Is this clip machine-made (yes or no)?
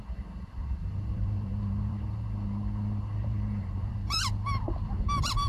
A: yes